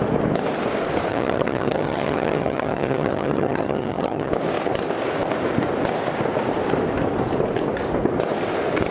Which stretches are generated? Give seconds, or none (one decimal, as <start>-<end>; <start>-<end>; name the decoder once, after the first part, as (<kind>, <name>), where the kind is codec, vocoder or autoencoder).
1.1-4.3 (vocoder, HiFi-GAN)